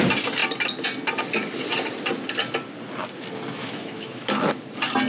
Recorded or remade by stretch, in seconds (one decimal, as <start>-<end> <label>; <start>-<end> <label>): 0.0-3.6 recorded; 3.6-4.3 remade; 4.3-5.1 recorded